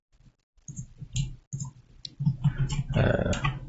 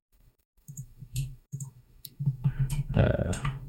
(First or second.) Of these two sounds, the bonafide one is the first